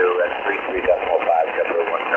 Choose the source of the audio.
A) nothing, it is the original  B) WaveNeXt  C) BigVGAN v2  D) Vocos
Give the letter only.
A